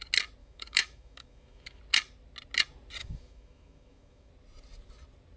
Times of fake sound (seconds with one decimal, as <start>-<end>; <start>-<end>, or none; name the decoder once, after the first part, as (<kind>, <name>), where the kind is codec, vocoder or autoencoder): 0.4-1.8 (autoencoder, DAC-VAE); 3.0-4.3